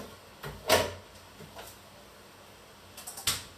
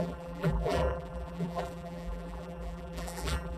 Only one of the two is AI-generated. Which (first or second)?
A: second